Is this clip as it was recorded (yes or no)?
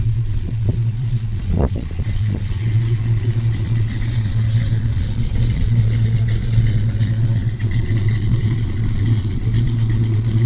no